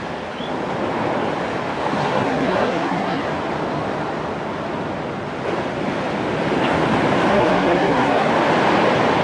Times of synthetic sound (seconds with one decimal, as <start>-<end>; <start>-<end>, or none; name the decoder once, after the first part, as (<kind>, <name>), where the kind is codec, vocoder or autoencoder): 2.0-3.2 (codec, SNAC); 7.3-8.3